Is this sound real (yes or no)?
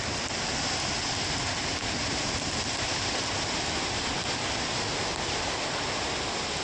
yes